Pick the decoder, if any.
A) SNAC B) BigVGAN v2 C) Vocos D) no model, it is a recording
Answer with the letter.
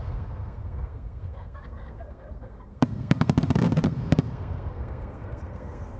A